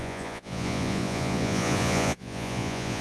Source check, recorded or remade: remade